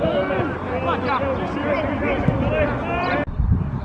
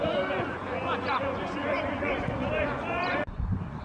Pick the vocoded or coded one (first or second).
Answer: second